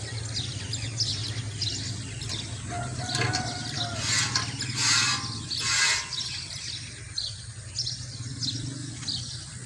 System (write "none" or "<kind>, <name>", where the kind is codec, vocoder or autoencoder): none